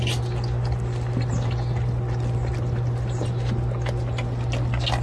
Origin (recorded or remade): recorded